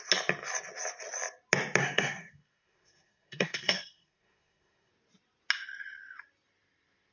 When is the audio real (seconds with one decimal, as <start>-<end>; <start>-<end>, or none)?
0.0-1.8; 4.9-7.1